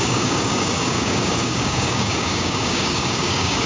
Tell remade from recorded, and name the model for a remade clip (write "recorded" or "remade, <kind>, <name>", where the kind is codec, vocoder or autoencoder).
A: remade, codec, DAC